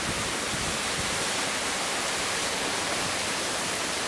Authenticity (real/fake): fake